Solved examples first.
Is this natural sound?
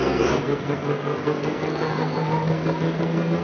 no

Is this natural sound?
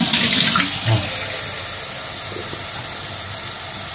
yes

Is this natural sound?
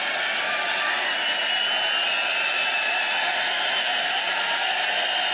yes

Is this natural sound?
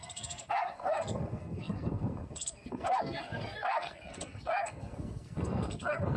no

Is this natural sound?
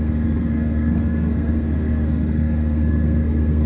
no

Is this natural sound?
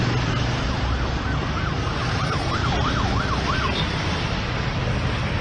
yes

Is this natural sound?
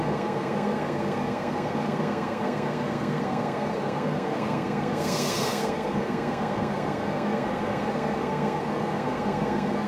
no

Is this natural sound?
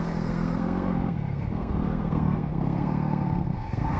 no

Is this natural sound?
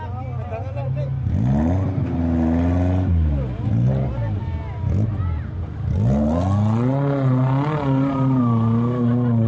yes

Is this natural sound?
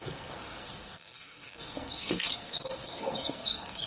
no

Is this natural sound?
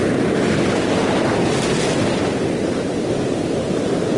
yes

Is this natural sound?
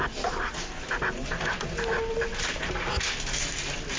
yes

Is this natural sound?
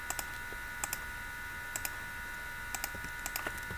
yes